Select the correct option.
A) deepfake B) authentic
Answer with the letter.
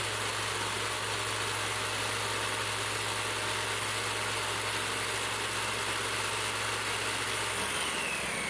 B